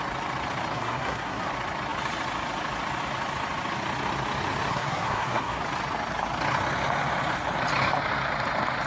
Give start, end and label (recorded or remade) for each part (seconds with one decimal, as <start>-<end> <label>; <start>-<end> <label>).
0.0-0.7 recorded; 0.7-1.5 remade; 1.5-4.7 recorded; 4.7-5.6 remade; 5.6-8.9 recorded